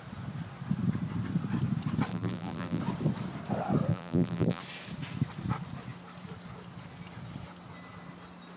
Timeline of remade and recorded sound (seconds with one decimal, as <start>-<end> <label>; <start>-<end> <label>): 0.0-2.1 recorded; 2.1-2.8 remade; 2.8-3.9 recorded; 3.9-4.6 remade; 4.6-8.6 recorded